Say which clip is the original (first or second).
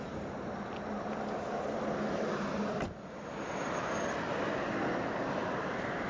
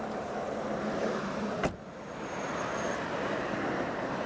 first